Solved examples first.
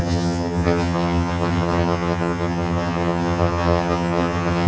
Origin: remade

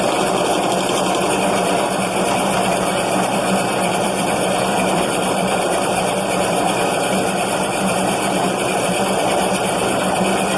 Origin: remade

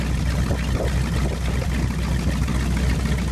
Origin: recorded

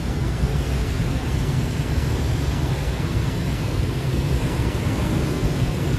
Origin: remade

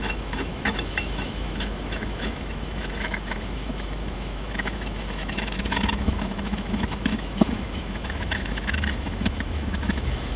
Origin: remade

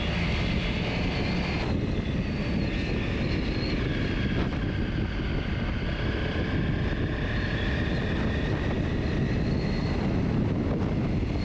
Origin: recorded